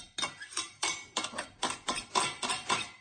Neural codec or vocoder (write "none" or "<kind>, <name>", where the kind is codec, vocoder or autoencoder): none